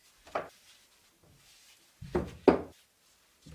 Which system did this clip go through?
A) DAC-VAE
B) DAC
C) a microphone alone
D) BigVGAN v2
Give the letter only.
C